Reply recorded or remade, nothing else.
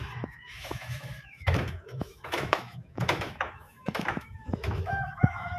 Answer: remade